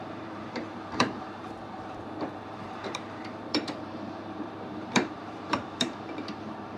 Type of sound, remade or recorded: remade